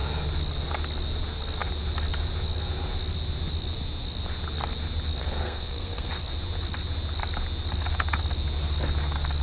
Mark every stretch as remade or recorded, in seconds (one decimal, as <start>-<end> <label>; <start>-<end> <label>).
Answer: 0.0-5.2 recorded; 5.2-6.2 remade; 6.2-9.4 recorded